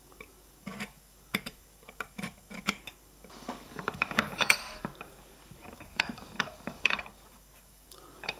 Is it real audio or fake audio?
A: fake